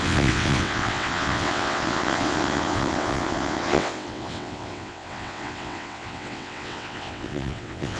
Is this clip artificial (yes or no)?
yes